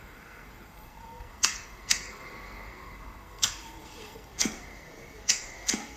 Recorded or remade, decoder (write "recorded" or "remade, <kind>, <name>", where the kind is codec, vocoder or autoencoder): remade, codec, SNAC